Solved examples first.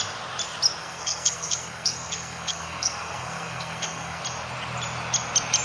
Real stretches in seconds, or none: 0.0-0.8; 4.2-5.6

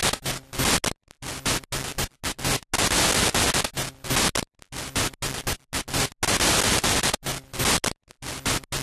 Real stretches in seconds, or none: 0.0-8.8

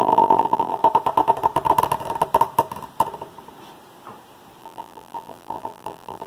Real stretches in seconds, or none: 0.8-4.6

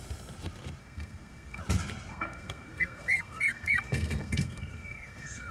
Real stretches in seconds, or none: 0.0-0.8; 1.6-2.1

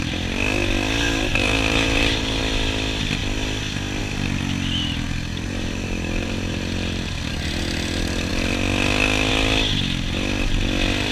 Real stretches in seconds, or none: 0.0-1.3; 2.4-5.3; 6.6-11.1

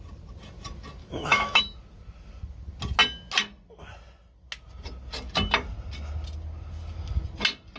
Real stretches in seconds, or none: 0.0-1.0; 1.6-7.8